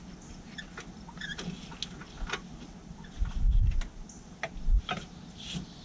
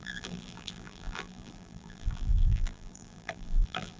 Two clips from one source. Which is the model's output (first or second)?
second